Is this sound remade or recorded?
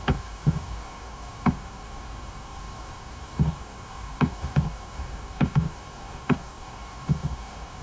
remade